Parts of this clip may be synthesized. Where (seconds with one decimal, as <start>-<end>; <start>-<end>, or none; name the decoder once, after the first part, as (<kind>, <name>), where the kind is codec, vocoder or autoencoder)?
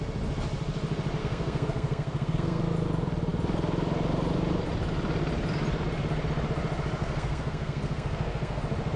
1.2-2.6 (codec, SNAC); 7.0-8.6